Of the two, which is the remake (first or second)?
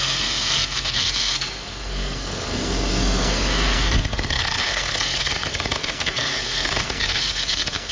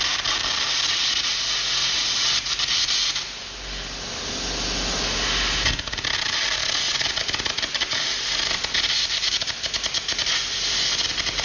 first